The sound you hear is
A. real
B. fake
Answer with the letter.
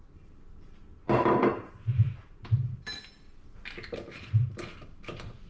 A